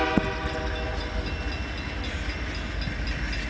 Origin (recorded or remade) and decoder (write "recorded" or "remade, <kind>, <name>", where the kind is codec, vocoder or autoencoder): recorded